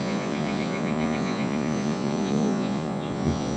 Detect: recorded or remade remade